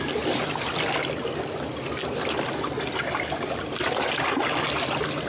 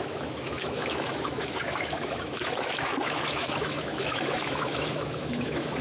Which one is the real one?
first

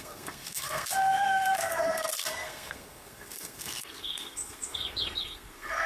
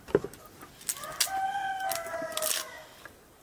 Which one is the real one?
second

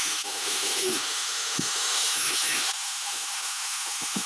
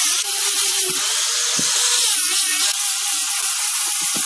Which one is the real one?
second